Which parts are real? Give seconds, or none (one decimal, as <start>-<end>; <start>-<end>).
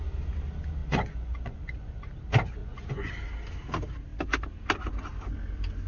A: 0.0-0.8; 2.1-2.6; 3.1-5.9